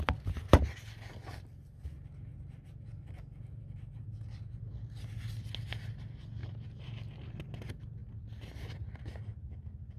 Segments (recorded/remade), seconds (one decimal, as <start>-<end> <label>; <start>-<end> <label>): 0.0-6.4 recorded; 6.4-7.3 remade; 7.3-10.0 recorded